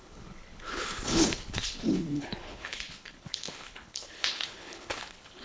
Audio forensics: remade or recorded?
remade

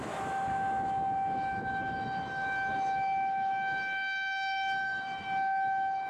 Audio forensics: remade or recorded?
remade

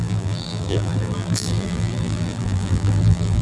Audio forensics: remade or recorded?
remade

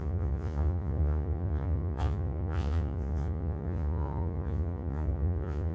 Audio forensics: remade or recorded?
remade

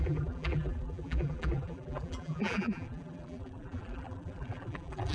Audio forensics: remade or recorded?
remade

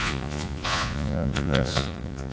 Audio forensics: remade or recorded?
remade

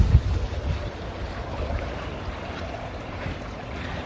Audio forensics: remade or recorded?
recorded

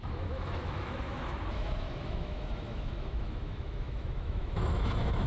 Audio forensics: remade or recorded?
remade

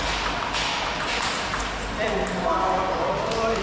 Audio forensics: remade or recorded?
recorded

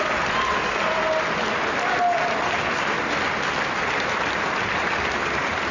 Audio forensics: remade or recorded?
recorded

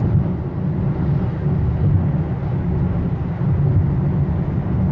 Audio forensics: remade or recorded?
recorded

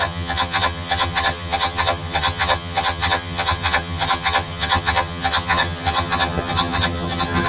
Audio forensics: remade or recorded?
remade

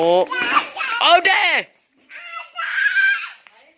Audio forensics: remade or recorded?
recorded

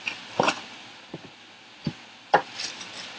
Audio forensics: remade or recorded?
recorded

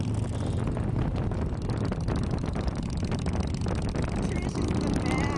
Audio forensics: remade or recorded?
recorded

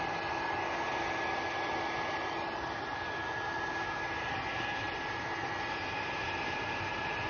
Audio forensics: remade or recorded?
recorded